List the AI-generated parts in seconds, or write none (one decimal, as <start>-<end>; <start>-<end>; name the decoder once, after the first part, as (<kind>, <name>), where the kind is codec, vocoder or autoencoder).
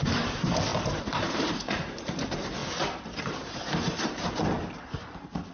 0.0-2.6 (vocoder, BigVGAN v2); 3.2-5.5